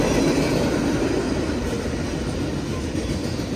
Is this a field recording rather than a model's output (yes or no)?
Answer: yes